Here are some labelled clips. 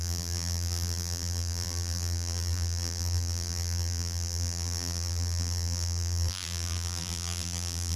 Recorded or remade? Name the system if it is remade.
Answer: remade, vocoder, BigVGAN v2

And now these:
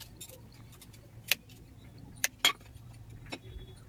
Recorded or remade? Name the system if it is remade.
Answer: recorded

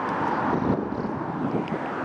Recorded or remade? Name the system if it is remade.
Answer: recorded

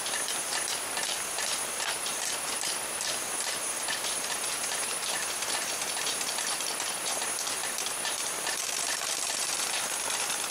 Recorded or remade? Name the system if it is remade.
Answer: remade, vocoder, BigVGAN v2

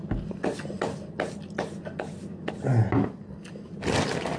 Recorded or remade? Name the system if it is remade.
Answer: recorded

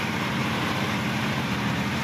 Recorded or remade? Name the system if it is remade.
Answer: remade, vocoder, BigVGAN v2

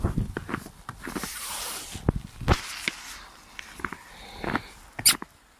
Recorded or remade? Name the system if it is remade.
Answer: recorded